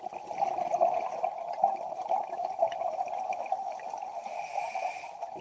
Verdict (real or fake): real